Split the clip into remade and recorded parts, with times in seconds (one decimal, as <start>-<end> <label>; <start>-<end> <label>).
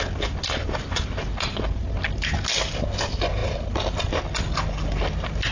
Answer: 0.0-5.5 recorded